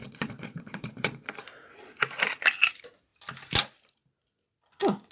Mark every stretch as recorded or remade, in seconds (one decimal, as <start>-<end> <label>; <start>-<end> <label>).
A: 0.0-1.3 remade; 1.3-5.1 recorded

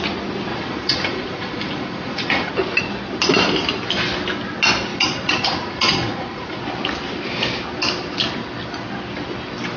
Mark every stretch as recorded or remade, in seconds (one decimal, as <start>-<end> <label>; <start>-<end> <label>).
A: 0.0-0.5 recorded; 0.5-2.5 remade; 2.5-4.9 recorded; 4.9-6.6 remade; 6.6-9.8 recorded

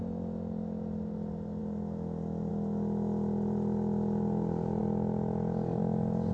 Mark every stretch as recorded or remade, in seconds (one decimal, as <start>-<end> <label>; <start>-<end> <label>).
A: 0.0-6.3 recorded